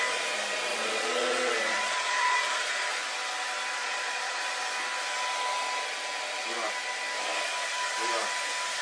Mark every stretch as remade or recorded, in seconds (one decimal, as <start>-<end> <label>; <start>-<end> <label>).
0.0-0.7 recorded; 0.7-3.0 remade; 3.0-3.8 recorded; 3.8-4.4 remade; 4.4-8.8 recorded